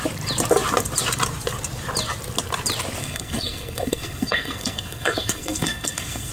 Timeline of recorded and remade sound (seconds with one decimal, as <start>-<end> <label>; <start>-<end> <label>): 0.0-3.0 recorded; 3.0-6.3 remade